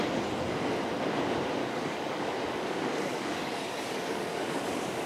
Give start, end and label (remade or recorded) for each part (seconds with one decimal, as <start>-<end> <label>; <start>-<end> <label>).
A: 0.0-1.6 recorded; 1.6-5.1 remade